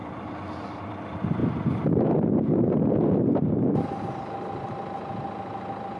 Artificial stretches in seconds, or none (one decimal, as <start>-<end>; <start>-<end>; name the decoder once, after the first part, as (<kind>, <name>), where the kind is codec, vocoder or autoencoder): 0.0-0.8 (vocoder, BigVGAN v2)